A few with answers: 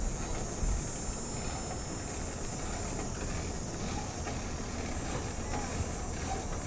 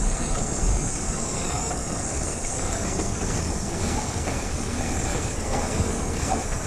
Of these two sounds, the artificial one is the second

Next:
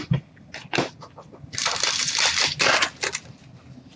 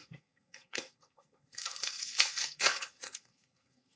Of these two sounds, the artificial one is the second